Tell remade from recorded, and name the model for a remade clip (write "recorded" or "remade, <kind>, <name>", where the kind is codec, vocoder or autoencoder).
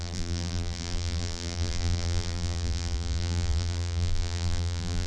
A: remade, vocoder, BigVGAN v2